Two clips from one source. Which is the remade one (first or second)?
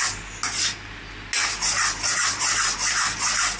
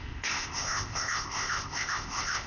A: second